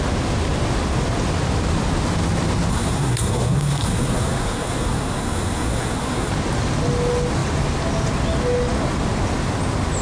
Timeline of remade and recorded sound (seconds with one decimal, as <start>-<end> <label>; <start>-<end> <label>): 0.0-2.7 recorded; 2.7-6.3 remade; 6.3-10.0 recorded